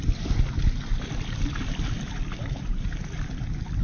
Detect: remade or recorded recorded